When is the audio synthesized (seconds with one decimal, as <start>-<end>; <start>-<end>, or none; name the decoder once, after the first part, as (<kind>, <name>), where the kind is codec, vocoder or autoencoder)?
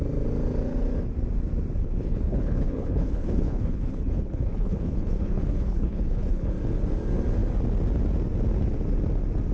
1.8-6.5 (codec, HILCodec)